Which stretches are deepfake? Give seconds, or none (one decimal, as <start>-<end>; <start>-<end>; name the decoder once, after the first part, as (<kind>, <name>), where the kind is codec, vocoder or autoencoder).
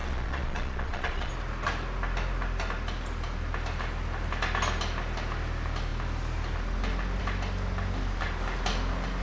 0.0-1.3 (vocoder, Vocos)